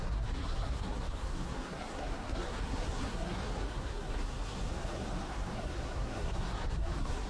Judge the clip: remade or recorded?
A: remade